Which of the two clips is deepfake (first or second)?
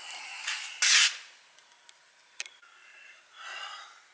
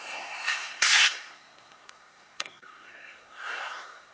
second